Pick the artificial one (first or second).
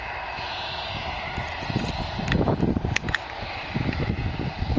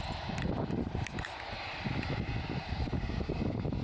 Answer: second